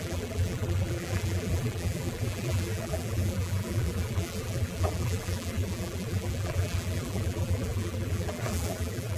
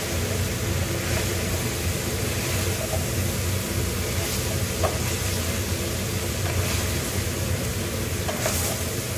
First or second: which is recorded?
second